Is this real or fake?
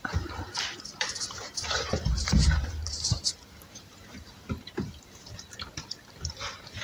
fake